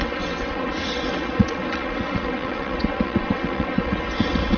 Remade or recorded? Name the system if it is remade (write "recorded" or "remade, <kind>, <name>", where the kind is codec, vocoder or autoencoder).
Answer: remade, vocoder, WaveNeXt